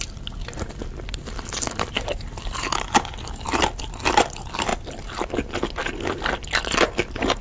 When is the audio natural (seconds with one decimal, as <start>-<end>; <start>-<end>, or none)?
0.0-0.8; 2.7-4.7; 5.3-7.4